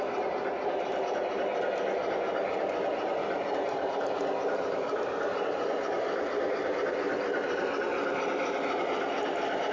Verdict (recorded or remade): recorded